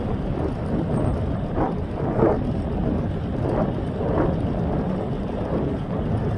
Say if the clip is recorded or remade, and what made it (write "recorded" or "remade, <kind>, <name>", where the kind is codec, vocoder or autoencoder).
recorded